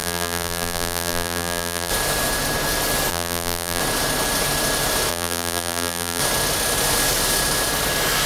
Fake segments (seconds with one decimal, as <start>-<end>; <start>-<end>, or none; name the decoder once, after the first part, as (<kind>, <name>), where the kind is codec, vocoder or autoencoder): 0.0-1.9 (vocoder, BigVGAN v2); 3.1-3.8; 5.1-6.2